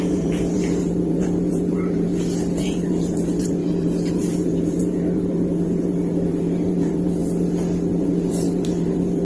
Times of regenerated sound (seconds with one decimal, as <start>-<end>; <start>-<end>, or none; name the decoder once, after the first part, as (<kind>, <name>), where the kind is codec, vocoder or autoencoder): 0.0-2.1 (vocoder, BigVGAN v2); 2.6-7.2; 7.9-9.2